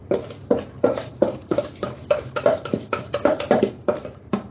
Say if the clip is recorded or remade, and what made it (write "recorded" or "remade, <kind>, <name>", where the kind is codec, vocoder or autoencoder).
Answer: remade, vocoder, BigVGAN v2